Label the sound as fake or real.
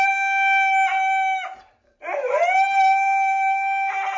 real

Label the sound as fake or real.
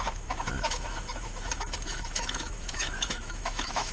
fake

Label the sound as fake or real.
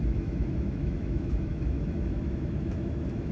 fake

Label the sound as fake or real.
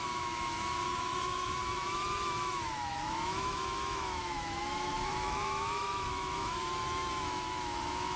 fake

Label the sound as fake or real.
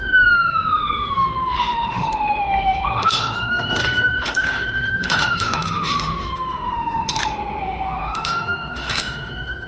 fake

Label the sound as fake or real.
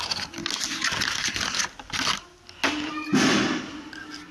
real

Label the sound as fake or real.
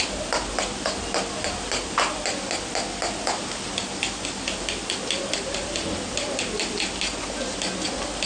real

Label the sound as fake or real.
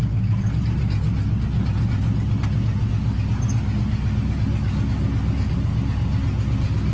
real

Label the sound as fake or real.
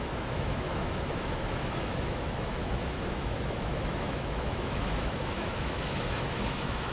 fake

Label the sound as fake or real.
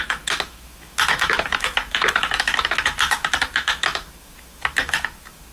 fake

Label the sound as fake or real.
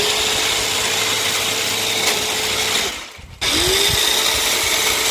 real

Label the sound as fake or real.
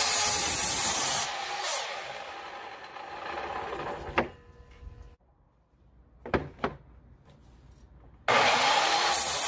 real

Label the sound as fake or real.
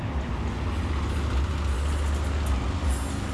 real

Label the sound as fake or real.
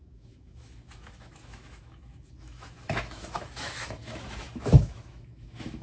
fake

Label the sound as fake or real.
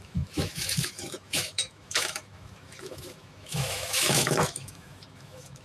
fake